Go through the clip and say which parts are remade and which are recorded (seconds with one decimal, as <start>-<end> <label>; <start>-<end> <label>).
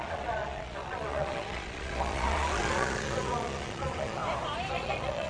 0.0-4.2 remade; 4.2-4.7 recorded; 4.7-5.3 remade